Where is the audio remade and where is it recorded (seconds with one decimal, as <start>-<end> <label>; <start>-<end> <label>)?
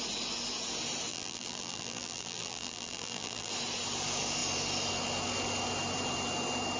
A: 0.0-1.1 recorded; 1.1-3.5 remade; 3.5-6.8 recorded